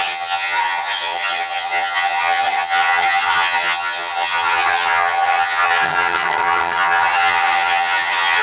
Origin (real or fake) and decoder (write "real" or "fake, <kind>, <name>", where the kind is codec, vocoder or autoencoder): fake, vocoder, HiFi-GAN